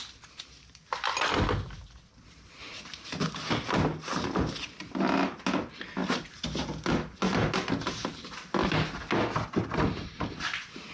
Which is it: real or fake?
real